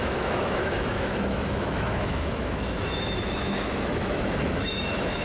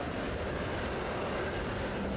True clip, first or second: second